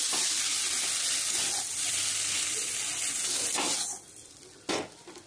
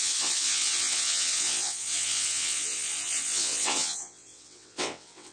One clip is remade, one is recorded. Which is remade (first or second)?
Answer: second